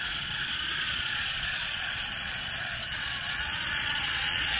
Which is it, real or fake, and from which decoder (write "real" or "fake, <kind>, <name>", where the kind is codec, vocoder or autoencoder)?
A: fake, vocoder, Vocos